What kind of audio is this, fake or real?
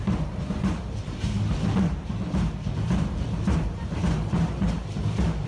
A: fake